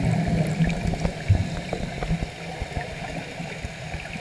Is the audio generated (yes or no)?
no